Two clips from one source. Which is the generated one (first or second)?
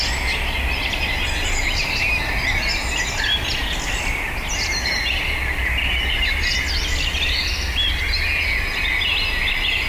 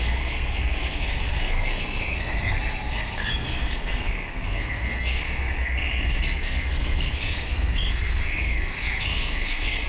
second